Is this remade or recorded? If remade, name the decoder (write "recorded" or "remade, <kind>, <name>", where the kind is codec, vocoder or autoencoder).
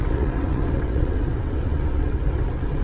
remade, vocoder, WaveNeXt